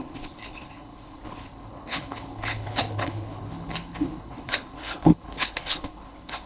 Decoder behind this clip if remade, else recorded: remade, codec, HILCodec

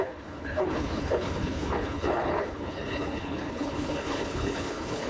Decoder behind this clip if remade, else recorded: remade, codec, HILCodec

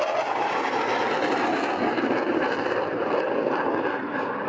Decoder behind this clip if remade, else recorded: recorded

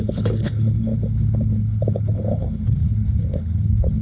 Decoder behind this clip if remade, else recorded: remade, codec, HILCodec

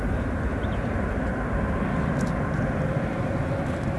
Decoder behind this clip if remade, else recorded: recorded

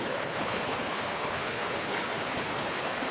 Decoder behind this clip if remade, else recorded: remade, codec, HILCodec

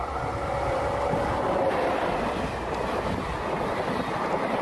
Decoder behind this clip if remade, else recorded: recorded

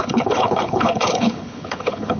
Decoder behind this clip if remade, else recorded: remade, codec, HILCodec